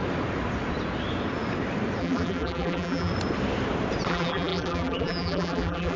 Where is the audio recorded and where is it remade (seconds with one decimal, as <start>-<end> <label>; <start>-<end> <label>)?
0.0-2.0 recorded; 2.0-3.1 remade; 3.1-4.1 recorded; 4.1-6.0 remade